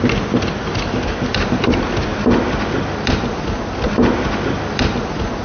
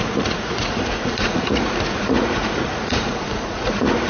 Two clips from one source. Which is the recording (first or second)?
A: first